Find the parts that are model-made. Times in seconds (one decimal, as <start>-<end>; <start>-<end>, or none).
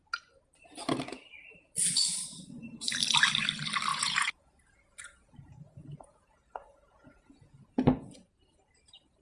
3.9-7.6